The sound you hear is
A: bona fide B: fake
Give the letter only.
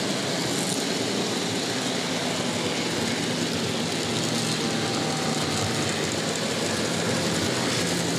A